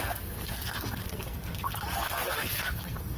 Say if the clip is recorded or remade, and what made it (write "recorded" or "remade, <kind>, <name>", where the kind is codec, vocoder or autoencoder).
remade, codec, SNAC